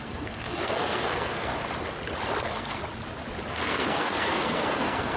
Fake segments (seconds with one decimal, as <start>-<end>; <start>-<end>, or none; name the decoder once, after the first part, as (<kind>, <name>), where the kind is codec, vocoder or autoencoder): 0.0-1.5 (codec, SNAC); 2.4-2.8; 3.5-5.2